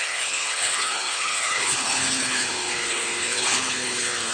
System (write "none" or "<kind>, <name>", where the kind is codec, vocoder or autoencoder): codec, HILCodec